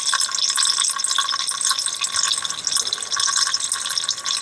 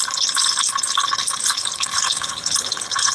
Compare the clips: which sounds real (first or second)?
first